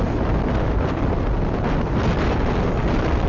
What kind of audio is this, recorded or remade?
remade